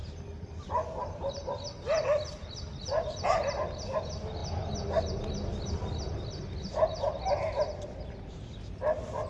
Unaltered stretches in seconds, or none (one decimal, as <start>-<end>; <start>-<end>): 0.0-9.3